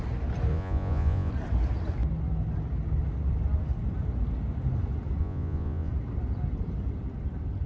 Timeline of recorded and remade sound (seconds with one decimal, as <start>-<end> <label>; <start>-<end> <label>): 0.0-0.5 recorded; 0.5-1.3 remade; 1.3-5.2 recorded; 5.2-5.9 remade; 5.9-7.7 recorded